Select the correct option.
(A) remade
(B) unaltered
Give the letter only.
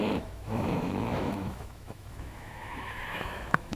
A